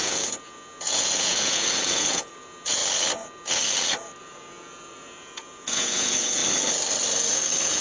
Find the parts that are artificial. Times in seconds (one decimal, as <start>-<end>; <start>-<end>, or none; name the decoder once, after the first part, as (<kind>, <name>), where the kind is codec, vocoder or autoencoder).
0.0-2.8 (vocoder, Vocos); 4.2-6.4; 7.3-7.8